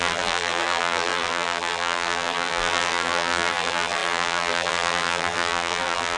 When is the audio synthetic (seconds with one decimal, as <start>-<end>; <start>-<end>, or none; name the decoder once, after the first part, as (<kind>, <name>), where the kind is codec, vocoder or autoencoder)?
0.0-6.2 (vocoder, BigVGAN v2)